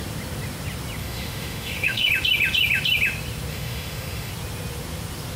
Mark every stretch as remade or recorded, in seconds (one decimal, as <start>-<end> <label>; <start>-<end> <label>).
0.0-1.0 recorded; 1.0-2.1 remade; 2.1-3.5 recorded; 3.5-4.3 remade; 4.3-5.4 recorded